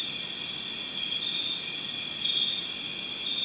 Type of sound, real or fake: real